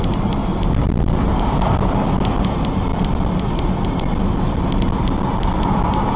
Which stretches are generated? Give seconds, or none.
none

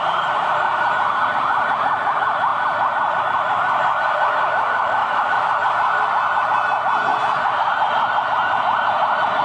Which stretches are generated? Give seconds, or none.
5.0-5.5 (autoencoder, DAC-VAE)

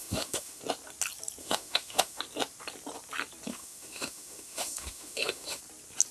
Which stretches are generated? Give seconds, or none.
0.0-0.6 (autoencoder, DAC-VAE); 1.4-2.2; 3.5-5.6

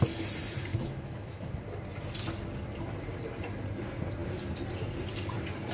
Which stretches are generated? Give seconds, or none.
0.7-1.5 (autoencoder, DAC-VAE)